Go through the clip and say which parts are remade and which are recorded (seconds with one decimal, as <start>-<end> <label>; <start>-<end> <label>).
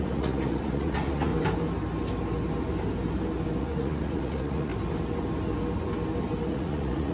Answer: 0.0-1.3 remade; 1.3-3.6 recorded; 3.6-4.7 remade; 4.7-6.5 recorded; 6.5-7.1 remade